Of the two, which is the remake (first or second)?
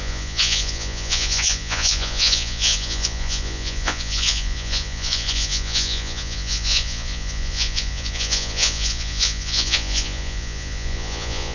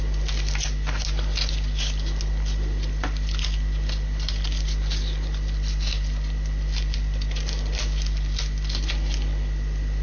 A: first